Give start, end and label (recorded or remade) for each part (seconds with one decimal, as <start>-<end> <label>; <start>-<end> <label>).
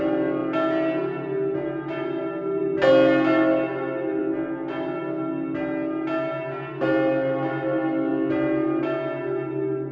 0.0-9.9 recorded